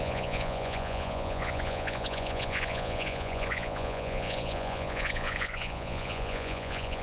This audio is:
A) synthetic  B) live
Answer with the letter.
A